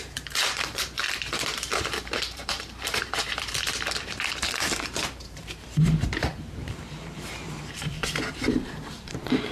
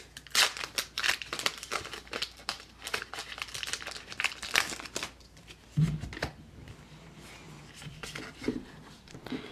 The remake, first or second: first